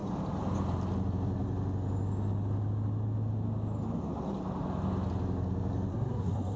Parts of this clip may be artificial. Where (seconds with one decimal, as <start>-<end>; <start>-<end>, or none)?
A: 5.9-6.6